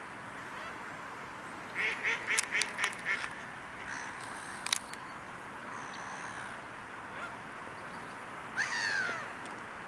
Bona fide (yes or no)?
yes